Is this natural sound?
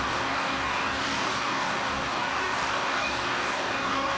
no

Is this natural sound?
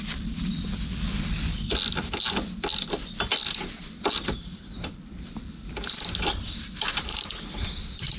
yes